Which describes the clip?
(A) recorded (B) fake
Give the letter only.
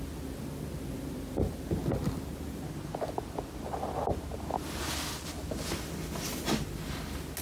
A